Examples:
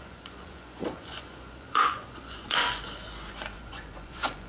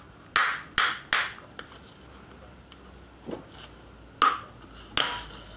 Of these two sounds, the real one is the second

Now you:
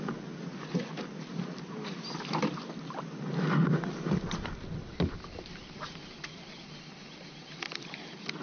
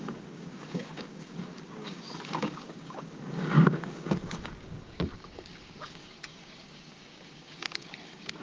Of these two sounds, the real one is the first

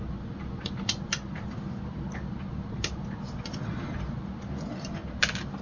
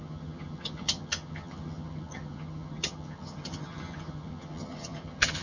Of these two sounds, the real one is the first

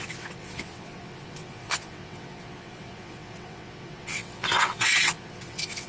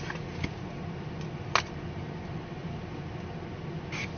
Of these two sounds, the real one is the second